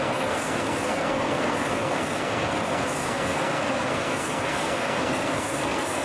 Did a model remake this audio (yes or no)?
yes